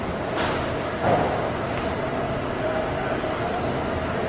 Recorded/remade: recorded